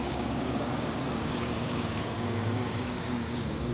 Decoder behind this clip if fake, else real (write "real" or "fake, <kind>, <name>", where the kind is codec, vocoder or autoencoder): fake, codec, DAC